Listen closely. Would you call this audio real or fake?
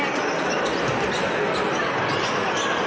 real